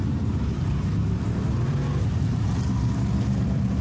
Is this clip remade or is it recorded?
remade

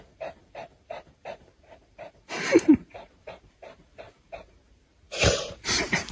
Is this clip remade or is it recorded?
remade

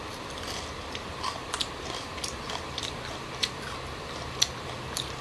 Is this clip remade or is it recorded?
remade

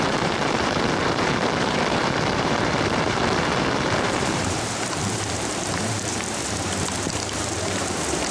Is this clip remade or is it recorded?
remade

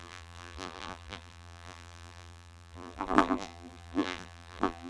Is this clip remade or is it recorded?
remade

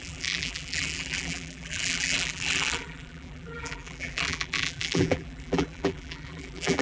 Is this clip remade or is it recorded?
remade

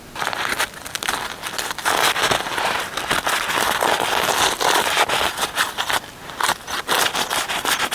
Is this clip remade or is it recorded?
recorded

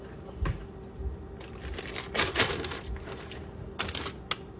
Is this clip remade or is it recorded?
recorded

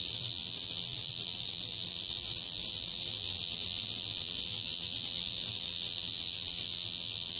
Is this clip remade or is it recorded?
remade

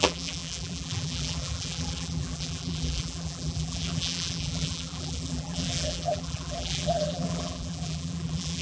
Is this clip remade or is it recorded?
remade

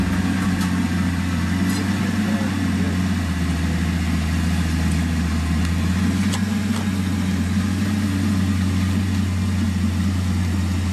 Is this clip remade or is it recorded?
recorded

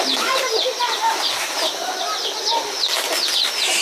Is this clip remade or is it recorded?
recorded